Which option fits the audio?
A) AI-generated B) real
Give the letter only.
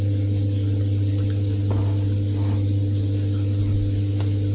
B